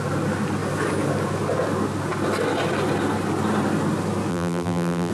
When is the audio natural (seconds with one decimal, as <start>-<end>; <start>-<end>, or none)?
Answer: 0.0-4.3